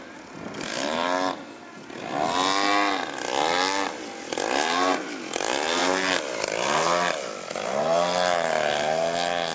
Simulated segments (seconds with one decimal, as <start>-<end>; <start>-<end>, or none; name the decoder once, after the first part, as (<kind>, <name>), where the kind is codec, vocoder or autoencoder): none

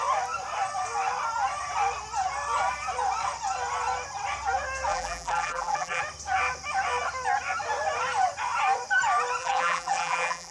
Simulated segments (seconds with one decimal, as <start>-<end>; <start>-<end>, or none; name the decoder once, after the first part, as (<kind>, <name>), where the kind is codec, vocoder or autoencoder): 4.9-6.0 (vocoder, BigVGAN v2); 9.4-10.5

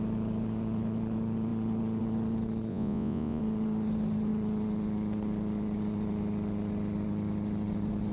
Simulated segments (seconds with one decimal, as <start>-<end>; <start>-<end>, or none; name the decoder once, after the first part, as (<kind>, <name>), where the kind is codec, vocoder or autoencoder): 2.7-3.4 (vocoder, Vocos)

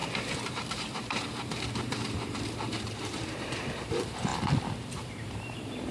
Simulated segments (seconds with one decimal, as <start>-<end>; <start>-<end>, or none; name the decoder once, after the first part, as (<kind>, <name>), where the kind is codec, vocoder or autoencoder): 0.0-4.3 (vocoder, BigVGAN v2); 4.9-5.9